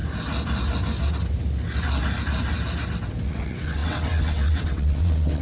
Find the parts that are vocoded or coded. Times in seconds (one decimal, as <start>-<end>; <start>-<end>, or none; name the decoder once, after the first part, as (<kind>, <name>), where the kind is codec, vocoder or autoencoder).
3.2-5.4 (vocoder, WaveNeXt)